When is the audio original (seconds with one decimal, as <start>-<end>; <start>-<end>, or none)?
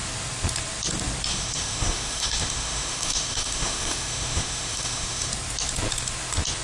0.0-1.3; 5.3-6.6